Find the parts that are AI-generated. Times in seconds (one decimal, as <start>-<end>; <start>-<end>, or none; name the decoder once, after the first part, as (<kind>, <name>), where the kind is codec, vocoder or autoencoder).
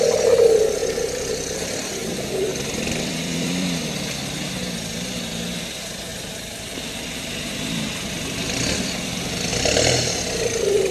0.8-1.6 (vocoder, BigVGAN v2); 2.0-4.5; 6.1-8.1